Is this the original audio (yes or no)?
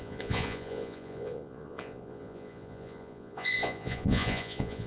no